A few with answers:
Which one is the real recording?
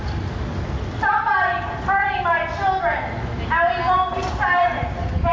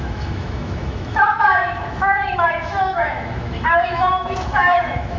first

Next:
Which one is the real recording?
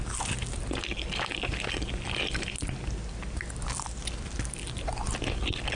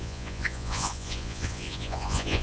first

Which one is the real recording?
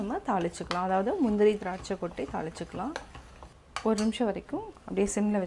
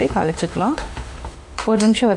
first